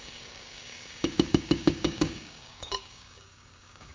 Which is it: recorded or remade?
remade